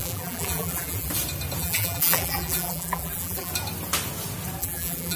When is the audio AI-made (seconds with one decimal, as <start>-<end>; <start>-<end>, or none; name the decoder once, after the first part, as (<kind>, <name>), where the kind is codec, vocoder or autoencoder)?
0.0-1.1 (vocoder, BigVGAN v2); 1.6-3.5; 4.6-5.2